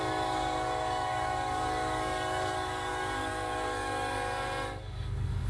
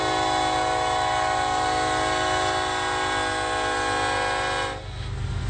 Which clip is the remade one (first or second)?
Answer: first